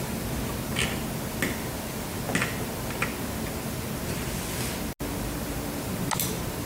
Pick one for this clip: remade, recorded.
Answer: recorded